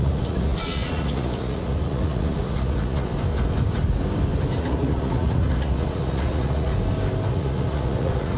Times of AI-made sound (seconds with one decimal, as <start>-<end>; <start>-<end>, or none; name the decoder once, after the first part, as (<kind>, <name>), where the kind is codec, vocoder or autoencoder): 0.0-3.1 (vocoder, Vocos); 4.6-6.7; 7.3-8.4